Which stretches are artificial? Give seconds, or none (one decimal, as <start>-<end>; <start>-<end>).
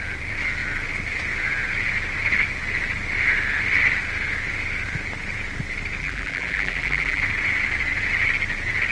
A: 6.0-7.2